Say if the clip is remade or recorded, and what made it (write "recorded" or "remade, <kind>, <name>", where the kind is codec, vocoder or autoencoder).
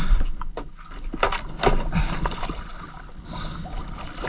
recorded